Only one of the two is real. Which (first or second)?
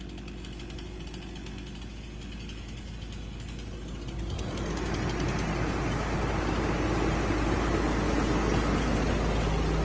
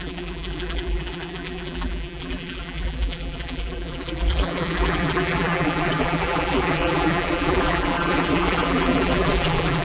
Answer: first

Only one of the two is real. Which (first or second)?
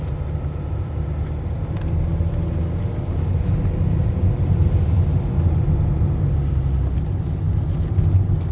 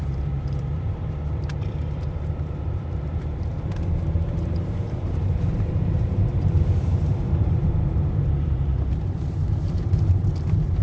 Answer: first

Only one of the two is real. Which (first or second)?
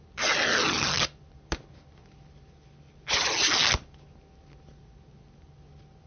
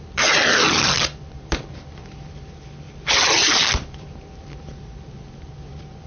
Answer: first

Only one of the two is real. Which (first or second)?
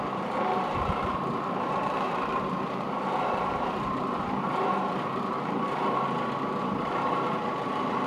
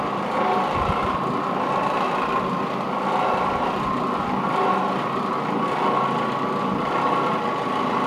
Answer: second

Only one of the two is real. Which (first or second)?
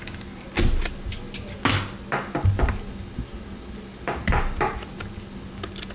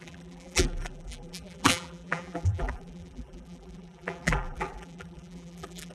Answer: first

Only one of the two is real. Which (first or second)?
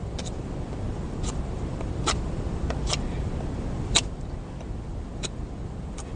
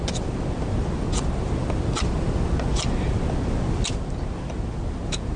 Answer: second